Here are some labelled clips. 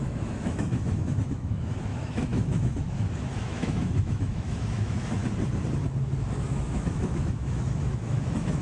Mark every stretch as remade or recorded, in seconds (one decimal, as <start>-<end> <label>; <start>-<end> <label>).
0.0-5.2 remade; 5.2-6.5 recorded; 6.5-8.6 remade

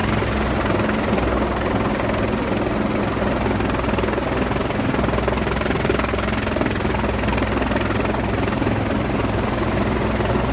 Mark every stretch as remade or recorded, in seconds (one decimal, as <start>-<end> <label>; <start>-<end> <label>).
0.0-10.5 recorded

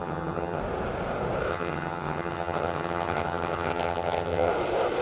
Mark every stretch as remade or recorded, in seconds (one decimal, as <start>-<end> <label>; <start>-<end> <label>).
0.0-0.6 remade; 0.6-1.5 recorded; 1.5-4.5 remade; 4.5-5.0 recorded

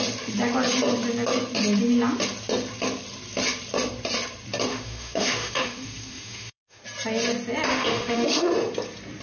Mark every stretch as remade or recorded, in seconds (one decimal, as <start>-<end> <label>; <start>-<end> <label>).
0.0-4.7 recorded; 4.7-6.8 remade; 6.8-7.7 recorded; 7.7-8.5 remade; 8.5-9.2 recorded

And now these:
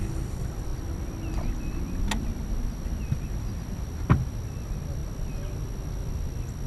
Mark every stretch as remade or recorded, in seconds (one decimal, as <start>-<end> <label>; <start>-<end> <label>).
0.0-6.7 recorded

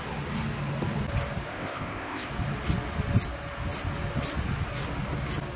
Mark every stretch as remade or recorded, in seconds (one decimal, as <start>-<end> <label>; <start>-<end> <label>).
0.0-1.5 recorded; 1.5-2.3 remade; 2.3-5.6 recorded